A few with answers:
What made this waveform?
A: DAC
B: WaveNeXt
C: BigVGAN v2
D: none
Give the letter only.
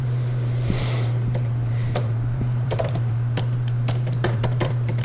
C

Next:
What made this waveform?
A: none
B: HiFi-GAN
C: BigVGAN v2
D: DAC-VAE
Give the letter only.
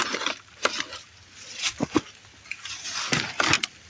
A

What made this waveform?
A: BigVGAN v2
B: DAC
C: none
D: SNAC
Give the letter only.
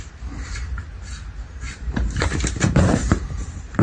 A